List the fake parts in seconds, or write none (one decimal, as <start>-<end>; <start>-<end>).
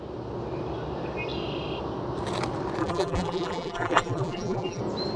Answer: 2.8-4.8